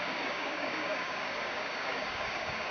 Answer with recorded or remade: remade